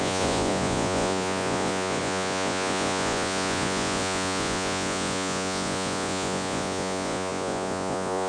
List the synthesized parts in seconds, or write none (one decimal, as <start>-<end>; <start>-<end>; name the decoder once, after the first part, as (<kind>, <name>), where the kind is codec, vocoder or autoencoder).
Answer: 0.0-8.3 (vocoder, Vocos)